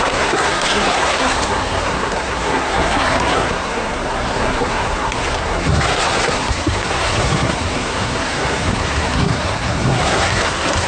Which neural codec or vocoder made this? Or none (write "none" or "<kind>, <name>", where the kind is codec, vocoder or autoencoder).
codec, SNAC